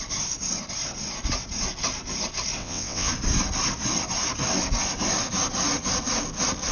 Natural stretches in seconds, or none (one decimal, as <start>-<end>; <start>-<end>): 0.0-2.6; 3.1-6.7